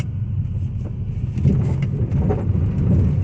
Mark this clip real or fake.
real